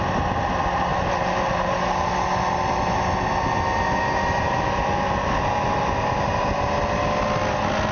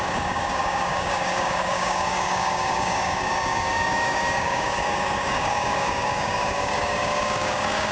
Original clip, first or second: first